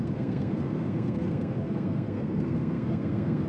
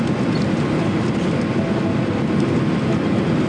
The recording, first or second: second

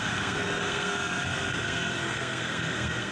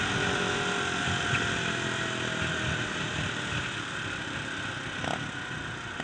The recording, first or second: second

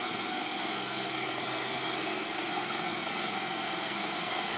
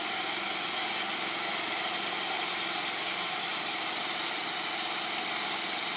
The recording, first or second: second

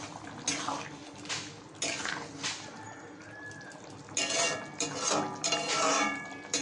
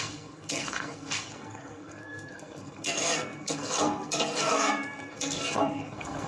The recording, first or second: first